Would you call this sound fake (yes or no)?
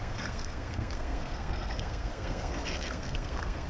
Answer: yes